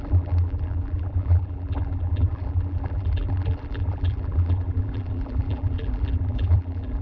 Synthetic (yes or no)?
yes